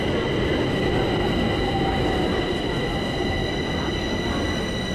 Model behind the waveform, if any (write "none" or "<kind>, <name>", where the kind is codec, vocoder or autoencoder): none